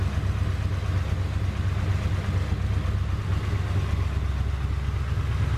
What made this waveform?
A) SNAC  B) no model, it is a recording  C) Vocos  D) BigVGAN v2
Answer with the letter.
B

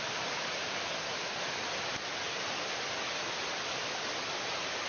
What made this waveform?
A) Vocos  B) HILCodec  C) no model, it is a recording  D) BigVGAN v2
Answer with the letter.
C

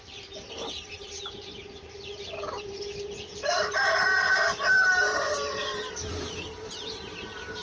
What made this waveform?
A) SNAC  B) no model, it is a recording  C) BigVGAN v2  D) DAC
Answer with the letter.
C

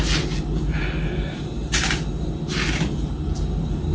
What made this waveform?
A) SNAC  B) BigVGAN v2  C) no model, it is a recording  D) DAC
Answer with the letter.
C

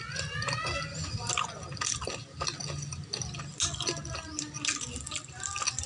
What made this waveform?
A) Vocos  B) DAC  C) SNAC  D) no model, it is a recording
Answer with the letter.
D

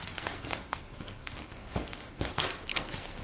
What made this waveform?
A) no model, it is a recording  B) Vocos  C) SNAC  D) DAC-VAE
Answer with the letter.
C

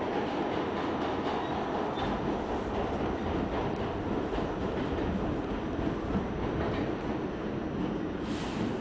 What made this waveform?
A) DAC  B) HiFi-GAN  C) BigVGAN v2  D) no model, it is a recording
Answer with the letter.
D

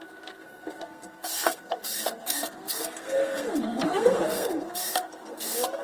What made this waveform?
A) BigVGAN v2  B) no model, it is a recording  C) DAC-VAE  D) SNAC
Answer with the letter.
D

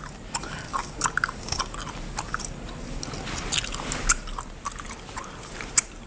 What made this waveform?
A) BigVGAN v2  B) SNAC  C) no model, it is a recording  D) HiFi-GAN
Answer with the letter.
C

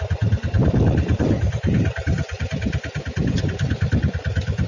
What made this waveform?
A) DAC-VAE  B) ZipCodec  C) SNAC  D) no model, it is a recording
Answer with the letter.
D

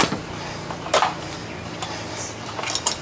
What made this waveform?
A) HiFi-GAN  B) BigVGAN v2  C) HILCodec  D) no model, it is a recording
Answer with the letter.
D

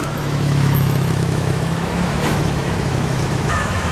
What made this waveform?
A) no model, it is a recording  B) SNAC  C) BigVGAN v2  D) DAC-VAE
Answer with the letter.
D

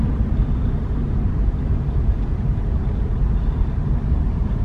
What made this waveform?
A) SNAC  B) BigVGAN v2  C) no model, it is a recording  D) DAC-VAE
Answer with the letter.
B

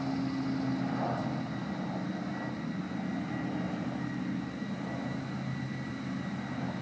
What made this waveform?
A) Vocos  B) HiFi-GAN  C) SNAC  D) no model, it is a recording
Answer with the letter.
D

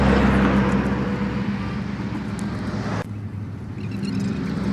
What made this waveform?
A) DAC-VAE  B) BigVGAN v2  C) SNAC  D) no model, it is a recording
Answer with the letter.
D